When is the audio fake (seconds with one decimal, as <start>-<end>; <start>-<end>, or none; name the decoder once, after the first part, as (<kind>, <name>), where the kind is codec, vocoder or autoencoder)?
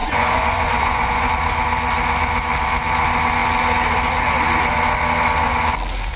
0.0-1.3 (vocoder, Vocos)